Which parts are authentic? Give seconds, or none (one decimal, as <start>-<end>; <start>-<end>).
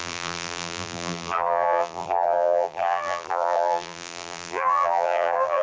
none